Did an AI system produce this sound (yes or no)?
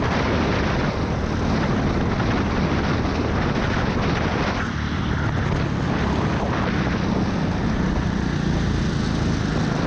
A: no